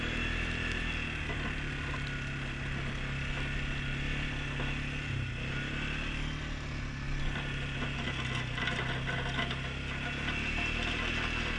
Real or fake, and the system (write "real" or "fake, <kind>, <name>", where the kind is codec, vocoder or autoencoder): real